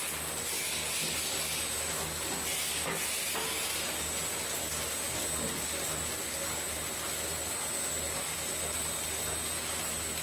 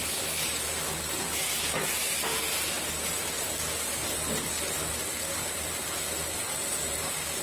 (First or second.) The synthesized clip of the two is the second